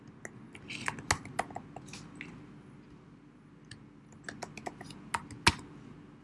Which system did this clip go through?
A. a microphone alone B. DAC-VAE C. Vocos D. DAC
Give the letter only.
A